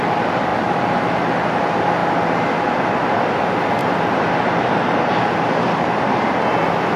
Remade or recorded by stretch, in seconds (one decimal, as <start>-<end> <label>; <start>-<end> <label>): 0.0-3.8 recorded; 3.8-5.1 remade; 5.1-7.0 recorded